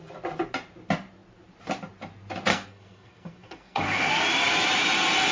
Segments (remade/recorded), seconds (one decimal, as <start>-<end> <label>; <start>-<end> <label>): 0.0-2.5 recorded; 2.5-4.1 remade; 4.1-5.3 recorded